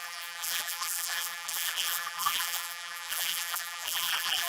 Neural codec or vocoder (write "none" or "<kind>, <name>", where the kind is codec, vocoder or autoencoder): vocoder, BigVGAN v2